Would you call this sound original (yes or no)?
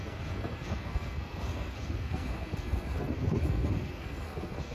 no